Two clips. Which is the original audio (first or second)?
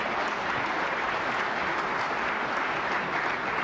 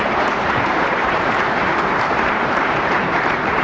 first